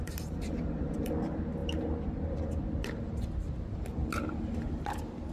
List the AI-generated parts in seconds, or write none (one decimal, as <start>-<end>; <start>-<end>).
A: 0.0-1.1